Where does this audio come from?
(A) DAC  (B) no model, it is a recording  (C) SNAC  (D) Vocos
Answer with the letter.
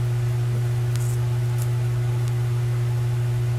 B